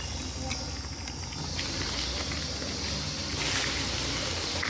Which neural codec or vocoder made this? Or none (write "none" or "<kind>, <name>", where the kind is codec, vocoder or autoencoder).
none